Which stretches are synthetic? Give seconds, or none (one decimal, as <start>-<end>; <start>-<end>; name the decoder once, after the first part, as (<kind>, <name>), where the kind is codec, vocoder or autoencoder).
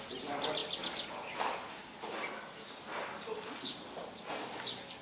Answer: none